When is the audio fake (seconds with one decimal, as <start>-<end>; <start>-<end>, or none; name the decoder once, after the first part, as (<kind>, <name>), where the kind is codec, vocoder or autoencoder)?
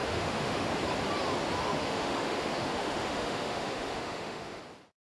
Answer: 0.0-0.7 (autoencoder, DAC-VAE); 1.6-4.6